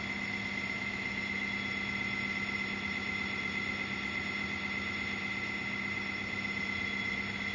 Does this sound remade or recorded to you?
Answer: recorded